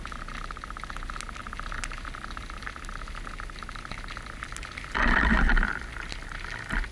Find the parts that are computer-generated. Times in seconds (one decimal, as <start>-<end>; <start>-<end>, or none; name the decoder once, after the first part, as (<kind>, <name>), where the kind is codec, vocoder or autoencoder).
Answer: none

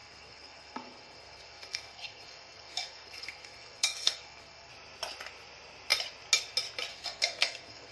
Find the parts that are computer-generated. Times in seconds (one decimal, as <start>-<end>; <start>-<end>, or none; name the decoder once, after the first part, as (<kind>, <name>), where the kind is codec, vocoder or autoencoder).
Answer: 0.0-4.7 (codec, SNAC); 6.9-7.9

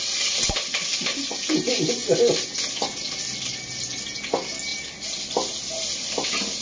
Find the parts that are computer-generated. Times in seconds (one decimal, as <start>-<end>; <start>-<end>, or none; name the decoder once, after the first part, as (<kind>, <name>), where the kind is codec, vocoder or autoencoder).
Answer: 4.7-5.3 (vocoder, BigVGAN v2)